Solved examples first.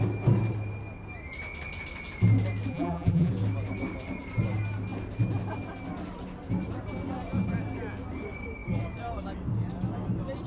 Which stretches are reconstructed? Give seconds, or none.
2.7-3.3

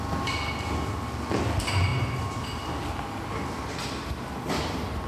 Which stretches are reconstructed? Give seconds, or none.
none

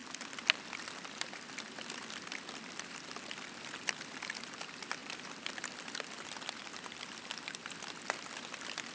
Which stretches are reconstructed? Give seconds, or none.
none

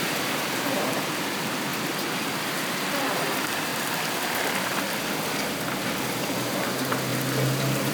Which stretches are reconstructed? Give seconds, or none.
0.0-1.7; 3.1-3.7; 6.2-7.1

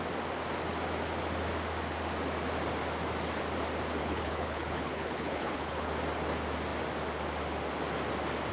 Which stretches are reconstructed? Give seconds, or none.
4.0-5.9

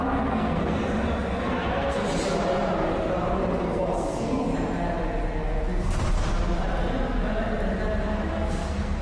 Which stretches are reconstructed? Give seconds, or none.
0.0-0.8; 1.4-2.0; 3.6-4.5; 8.3-9.0